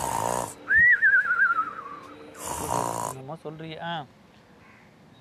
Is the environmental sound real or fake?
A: real